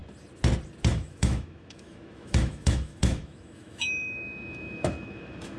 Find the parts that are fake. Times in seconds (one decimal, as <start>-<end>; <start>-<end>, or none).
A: 0.9-5.6